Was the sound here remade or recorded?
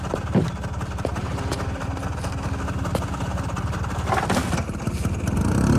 recorded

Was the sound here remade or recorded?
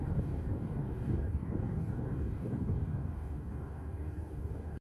remade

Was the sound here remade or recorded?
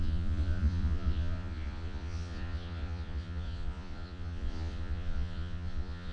remade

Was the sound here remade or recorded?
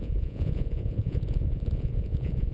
remade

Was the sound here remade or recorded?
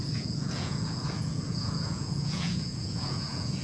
remade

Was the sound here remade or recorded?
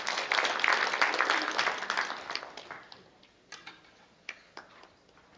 recorded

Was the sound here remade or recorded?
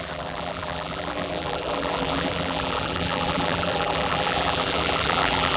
remade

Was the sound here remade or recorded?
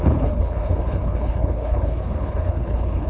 remade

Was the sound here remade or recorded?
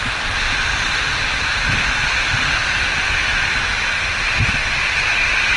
remade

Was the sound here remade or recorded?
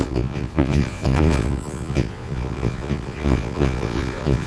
remade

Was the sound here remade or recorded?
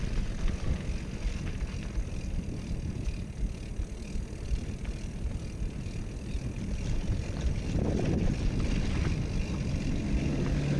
recorded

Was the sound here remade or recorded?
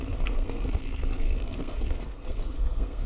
remade